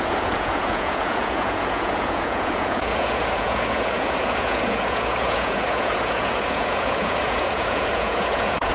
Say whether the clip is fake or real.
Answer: fake